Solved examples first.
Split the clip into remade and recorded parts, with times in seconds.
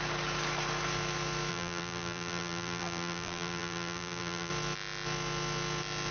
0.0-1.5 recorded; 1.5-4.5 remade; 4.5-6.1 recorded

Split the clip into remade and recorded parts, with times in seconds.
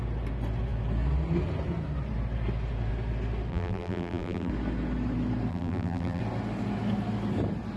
0.0-3.5 recorded; 3.5-4.5 remade; 4.5-5.5 recorded; 5.5-6.2 remade; 6.2-7.8 recorded